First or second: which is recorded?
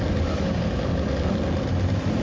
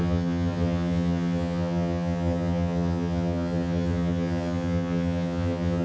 first